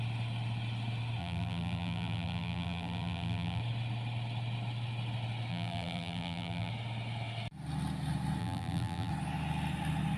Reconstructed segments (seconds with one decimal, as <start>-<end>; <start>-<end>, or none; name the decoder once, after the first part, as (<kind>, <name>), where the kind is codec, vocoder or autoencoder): 1.2-3.6 (vocoder, BigVGAN v2); 5.5-6.7; 8.4-9.1